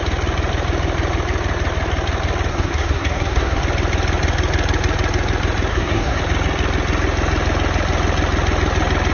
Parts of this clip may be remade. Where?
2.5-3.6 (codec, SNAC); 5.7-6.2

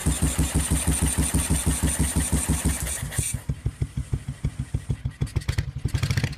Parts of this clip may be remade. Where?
none